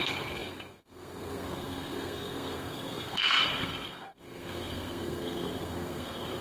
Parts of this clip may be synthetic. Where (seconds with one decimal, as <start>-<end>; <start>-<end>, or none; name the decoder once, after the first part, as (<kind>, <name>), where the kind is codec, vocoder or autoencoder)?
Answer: 0.0-6.4 (codec, SNAC)